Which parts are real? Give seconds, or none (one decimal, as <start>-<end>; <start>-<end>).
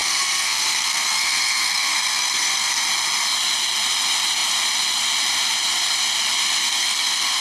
2.8-6.6